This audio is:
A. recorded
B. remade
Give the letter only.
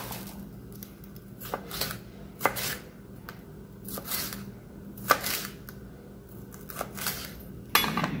A